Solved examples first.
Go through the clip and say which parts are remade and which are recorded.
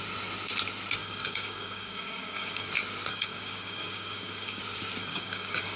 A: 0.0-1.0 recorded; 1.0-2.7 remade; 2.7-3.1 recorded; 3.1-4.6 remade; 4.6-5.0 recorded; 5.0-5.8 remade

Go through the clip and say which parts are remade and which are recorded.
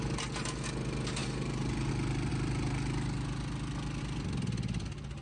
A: 0.0-1.2 recorded; 1.2-1.9 remade; 1.9-5.2 recorded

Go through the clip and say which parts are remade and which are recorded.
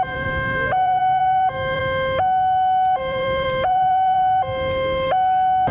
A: 0.0-1.8 remade; 1.8-3.0 recorded; 3.0-4.4 remade; 4.4-5.7 recorded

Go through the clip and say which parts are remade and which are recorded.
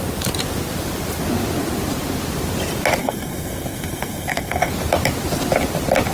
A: 0.0-3.0 recorded; 3.0-4.7 remade; 4.7-6.1 recorded